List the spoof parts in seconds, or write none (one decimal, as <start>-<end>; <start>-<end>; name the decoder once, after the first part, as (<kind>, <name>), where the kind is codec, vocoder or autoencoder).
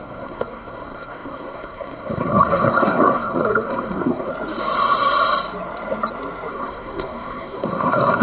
0.0-4.3 (codec, SNAC); 6.5-8.2